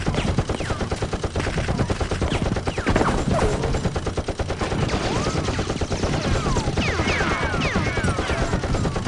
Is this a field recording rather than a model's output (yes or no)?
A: yes